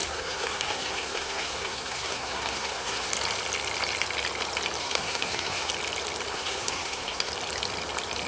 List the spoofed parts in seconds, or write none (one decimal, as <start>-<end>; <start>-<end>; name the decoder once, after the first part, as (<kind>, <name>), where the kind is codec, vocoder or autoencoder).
0.0-3.1 (codec, SNAC); 4.8-5.7; 6.3-7.3